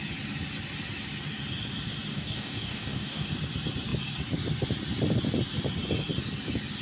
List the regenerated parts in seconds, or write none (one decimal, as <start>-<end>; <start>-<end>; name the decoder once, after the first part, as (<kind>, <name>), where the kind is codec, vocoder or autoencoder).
2.1-3.3 (codec, DAC)